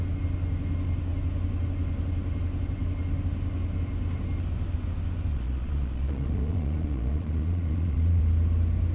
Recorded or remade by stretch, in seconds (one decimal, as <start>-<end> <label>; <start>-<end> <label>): 0.0-5.3 recorded; 5.3-8.2 remade; 8.2-8.9 recorded